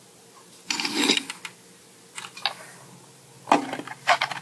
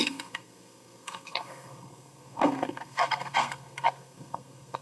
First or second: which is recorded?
first